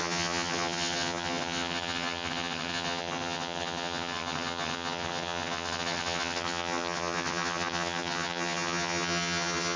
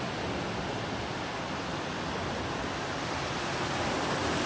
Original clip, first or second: second